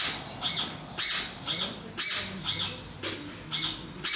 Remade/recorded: recorded